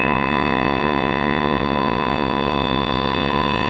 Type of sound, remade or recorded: remade